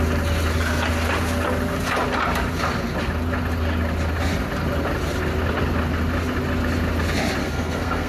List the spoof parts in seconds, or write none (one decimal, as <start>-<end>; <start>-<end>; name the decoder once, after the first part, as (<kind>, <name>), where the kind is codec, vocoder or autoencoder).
7.4-8.1 (codec, SNAC)